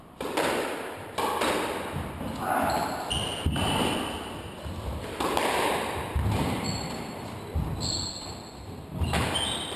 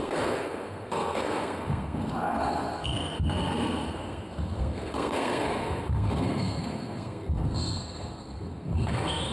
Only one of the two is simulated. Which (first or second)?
second